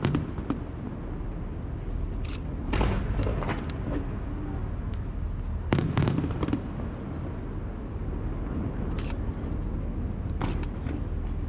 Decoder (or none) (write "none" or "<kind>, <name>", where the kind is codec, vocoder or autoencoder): none